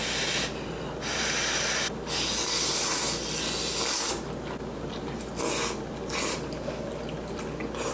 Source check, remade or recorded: recorded